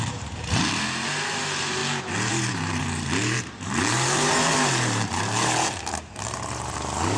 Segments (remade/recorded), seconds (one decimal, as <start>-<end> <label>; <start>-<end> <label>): 0.0-1.8 remade; 1.8-2.3 recorded; 2.3-7.2 remade